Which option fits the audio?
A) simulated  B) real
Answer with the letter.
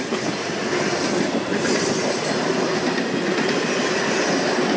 B